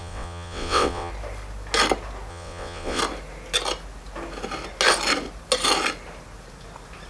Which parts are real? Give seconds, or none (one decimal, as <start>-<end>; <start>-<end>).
1.1-2.3; 3.0-7.1